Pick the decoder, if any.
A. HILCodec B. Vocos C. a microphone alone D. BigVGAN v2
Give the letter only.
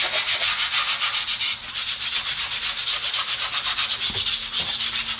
C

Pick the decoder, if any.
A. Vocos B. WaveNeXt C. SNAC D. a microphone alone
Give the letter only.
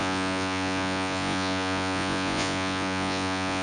A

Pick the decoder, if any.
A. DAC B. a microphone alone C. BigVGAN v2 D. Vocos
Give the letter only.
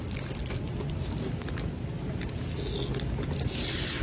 B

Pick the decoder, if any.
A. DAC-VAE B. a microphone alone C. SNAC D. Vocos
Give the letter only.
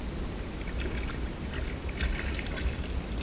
B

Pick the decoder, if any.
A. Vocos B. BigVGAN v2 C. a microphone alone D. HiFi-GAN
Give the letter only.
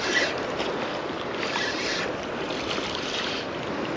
C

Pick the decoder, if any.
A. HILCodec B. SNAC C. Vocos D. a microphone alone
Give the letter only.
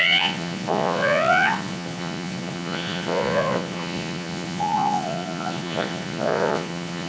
C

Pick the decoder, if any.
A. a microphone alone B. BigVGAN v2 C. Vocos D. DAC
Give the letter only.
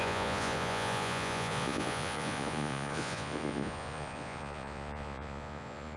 C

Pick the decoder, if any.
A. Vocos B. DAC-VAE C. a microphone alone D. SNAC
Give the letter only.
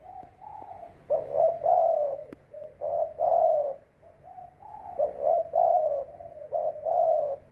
A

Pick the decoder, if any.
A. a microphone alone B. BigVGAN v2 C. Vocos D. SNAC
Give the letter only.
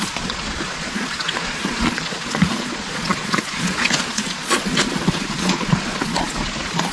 C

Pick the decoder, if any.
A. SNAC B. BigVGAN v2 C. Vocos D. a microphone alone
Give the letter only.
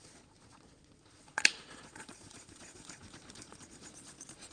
C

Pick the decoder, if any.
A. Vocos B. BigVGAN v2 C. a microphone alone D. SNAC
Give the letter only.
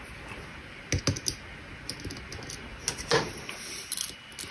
C